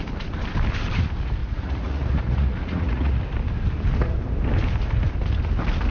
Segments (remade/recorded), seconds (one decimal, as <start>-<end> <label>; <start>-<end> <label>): 0.0-1.4 recorded; 1.4-3.2 remade; 3.2-5.9 recorded